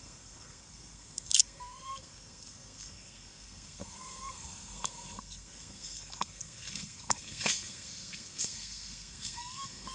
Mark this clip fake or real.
fake